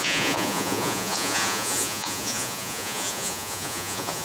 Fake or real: fake